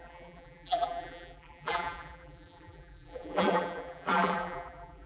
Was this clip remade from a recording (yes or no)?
yes